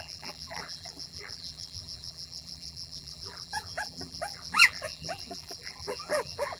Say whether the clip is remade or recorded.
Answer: remade